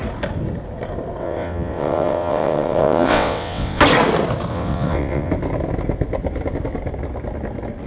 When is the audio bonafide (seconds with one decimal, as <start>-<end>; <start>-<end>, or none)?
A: 0.0-1.2; 3.8-4.5; 5.3-7.9